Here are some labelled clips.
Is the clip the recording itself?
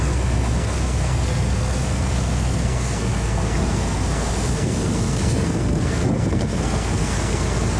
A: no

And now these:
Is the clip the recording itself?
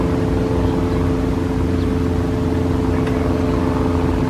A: yes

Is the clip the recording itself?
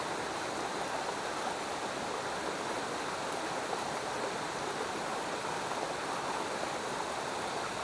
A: yes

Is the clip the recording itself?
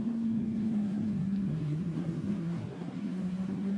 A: no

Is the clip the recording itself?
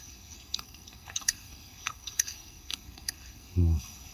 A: no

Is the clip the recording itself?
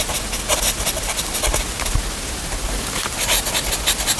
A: yes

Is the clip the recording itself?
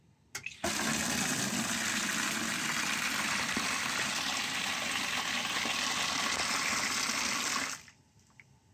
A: yes